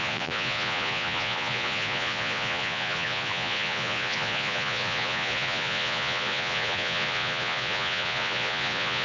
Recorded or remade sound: remade